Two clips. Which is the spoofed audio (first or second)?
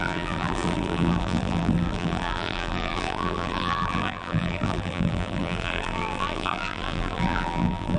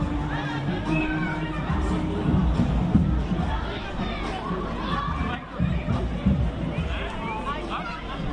first